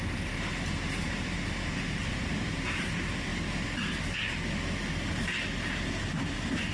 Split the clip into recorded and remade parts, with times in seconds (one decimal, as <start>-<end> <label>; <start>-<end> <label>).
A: 0.0-0.5 remade; 0.5-1.1 recorded; 1.1-3.3 remade; 3.3-6.1 recorded; 6.1-6.7 remade